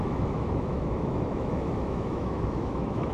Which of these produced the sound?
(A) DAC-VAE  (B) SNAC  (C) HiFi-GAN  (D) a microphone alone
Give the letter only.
A